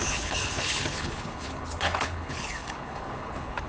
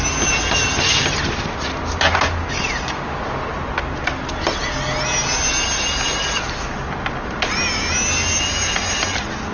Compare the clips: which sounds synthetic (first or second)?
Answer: first